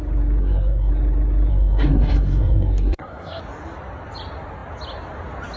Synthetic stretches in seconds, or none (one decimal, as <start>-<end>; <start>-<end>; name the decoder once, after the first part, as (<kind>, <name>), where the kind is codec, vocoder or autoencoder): 0.4-0.9 (codec, SNAC); 1.5-3.4